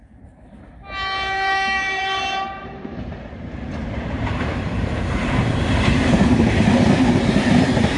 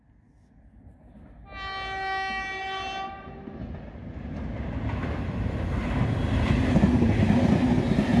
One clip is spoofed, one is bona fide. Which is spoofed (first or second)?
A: first